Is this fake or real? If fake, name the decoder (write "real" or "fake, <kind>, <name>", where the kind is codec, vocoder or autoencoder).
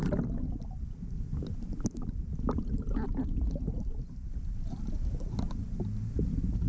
real